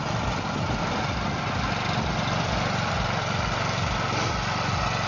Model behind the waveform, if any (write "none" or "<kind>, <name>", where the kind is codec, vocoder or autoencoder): none